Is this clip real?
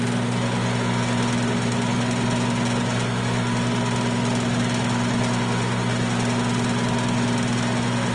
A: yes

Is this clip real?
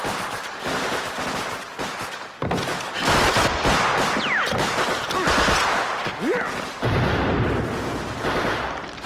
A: yes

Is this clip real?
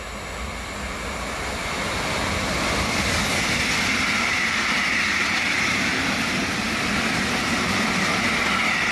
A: yes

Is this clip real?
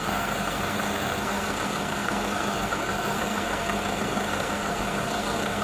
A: no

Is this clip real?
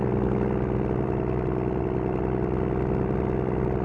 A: yes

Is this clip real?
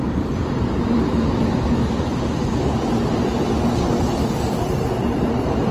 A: no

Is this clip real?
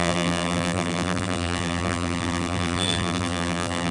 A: no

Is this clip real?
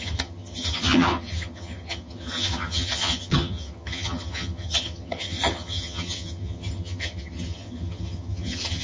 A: no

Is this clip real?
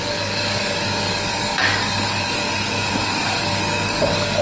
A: no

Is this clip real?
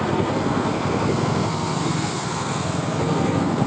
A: no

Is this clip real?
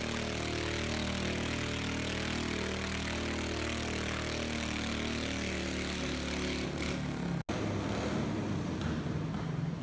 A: yes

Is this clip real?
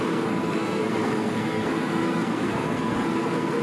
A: no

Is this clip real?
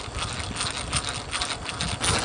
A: yes